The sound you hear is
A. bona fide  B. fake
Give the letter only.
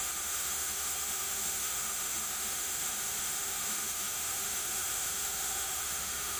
B